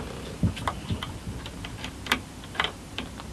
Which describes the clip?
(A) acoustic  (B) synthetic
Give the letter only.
B